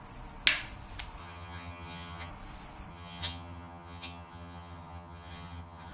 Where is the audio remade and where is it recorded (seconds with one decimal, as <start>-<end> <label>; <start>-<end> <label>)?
0.0-1.2 recorded; 1.2-2.3 remade; 2.3-2.9 recorded; 2.9-5.9 remade